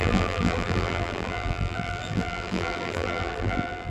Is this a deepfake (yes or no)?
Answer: yes